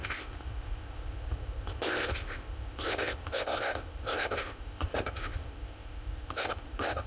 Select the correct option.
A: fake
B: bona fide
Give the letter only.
A